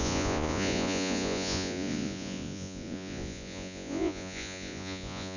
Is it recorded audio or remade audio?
remade